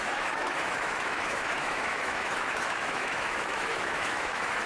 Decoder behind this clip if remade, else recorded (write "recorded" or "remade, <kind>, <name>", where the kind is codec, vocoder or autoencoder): remade, autoencoder, DAC-VAE